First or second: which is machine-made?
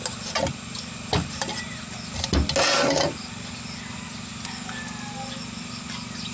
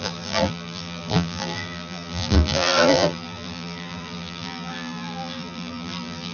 second